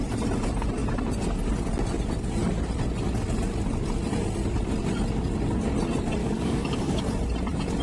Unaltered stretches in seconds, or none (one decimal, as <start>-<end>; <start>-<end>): 0.0-6.2; 7.0-7.8